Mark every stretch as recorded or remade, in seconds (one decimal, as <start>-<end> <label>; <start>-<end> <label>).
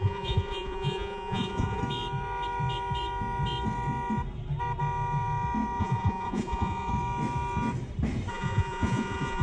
0.0-1.8 remade; 1.8-5.8 recorded; 5.8-6.9 remade; 6.9-8.3 recorded; 8.3-9.4 remade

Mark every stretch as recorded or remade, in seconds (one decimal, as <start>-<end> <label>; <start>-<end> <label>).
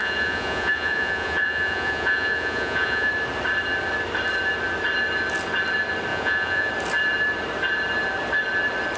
0.0-3.1 remade; 3.1-6.1 recorded; 6.1-6.7 remade; 6.7-9.0 recorded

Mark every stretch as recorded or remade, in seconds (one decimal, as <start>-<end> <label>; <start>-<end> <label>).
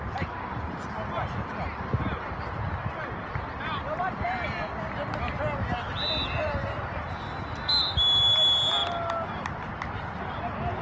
0.0-10.8 recorded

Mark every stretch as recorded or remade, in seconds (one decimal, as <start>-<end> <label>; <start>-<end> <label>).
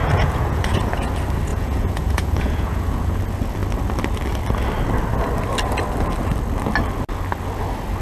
0.0-1.1 remade; 1.1-1.5 recorded; 1.5-3.2 remade; 3.2-8.0 recorded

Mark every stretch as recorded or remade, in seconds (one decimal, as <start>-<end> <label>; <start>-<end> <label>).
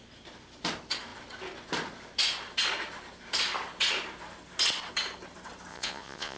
0.0-5.7 recorded; 5.7-6.4 remade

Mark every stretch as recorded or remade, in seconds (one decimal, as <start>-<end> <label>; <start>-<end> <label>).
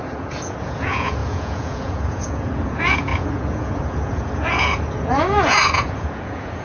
0.0-6.6 remade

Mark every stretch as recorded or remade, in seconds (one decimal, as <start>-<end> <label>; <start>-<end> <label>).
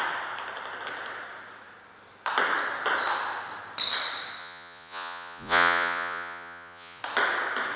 0.0-4.4 recorded; 4.4-7.0 remade; 7.0-7.8 recorded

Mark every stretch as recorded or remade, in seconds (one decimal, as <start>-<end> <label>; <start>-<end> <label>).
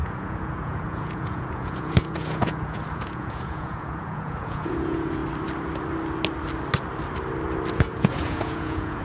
0.0-5.2 remade; 5.2-7.7 recorded; 7.7-9.0 remade